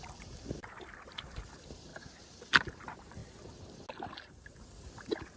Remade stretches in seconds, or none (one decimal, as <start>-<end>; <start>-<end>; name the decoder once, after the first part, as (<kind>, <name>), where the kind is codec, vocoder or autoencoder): 0.0-1.9 (vocoder, BigVGAN v2); 2.6-3.2; 4.1-5.4